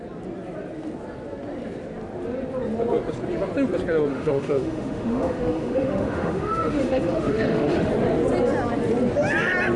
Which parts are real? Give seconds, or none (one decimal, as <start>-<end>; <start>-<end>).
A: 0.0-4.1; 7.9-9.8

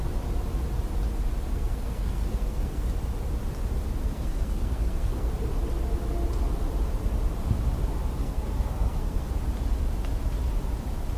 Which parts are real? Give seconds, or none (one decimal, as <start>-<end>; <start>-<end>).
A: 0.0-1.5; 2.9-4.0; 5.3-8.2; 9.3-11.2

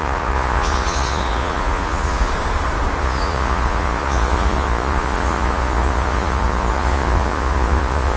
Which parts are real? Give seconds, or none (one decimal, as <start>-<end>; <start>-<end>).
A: 2.3-3.0

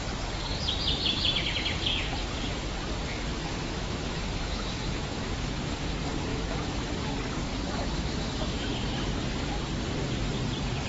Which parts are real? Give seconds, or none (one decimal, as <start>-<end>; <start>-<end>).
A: 0.0-3.3; 5.3-6.3; 6.9-7.5; 8.7-10.9

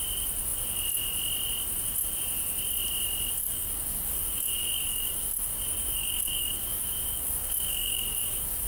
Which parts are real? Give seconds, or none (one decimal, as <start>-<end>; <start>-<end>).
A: 0.0-3.4

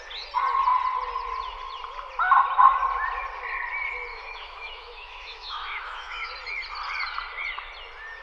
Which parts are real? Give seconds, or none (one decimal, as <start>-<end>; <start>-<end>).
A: 0.0-4.1; 6.3-8.2